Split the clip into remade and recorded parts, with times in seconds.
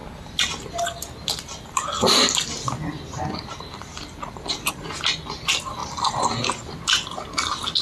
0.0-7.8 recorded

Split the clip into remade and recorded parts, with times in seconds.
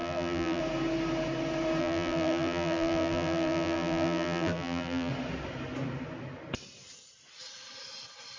0.0-0.6 remade; 0.6-1.8 recorded; 1.8-5.1 remade; 5.1-8.4 recorded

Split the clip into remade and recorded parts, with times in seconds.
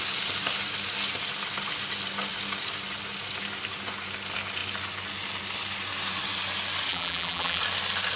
0.0-6.9 recorded; 6.9-7.6 remade; 7.6-8.2 recorded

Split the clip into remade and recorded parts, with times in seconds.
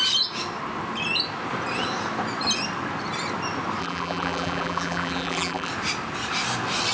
0.0-3.8 recorded; 3.8-5.7 remade; 5.7-6.9 recorded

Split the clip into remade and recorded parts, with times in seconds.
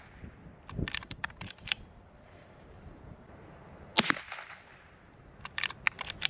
0.0-1.0 recorded; 1.0-3.3 remade; 3.3-6.3 recorded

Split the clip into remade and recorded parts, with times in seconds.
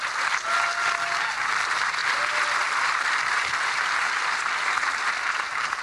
0.0-2.0 recorded; 2.0-4.4 remade; 4.4-5.8 recorded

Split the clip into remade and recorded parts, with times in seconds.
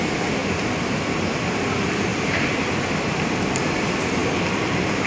0.0-2.1 recorded; 2.1-3.6 remade; 3.6-5.1 recorded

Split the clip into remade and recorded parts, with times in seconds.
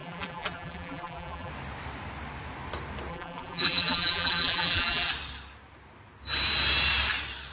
0.0-1.5 remade; 1.5-3.1 recorded; 3.1-5.1 remade; 5.1-7.5 recorded